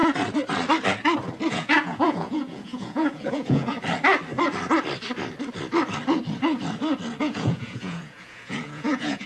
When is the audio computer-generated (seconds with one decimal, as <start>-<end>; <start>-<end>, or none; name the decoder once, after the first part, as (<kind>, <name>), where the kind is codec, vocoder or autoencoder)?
1.5-3.7 (vocoder, Vocos); 7.2-9.3